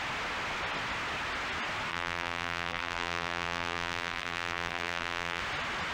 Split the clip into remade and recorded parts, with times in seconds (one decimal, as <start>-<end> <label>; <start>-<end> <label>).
0.0-1.9 recorded; 1.9-5.4 remade; 5.4-5.9 recorded